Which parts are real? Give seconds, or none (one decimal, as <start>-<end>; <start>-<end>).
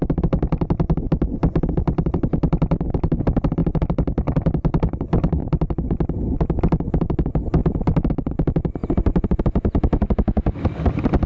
0.0-3.6; 4.2-11.3